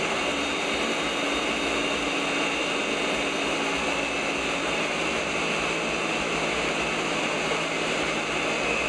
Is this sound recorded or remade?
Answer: recorded